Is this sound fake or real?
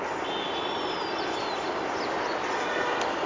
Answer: real